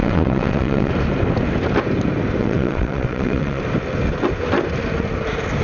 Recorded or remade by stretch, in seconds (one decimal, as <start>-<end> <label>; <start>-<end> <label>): 0.0-0.9 remade; 0.9-2.4 recorded; 2.4-3.6 remade; 3.6-5.6 recorded